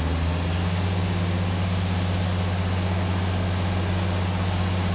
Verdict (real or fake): real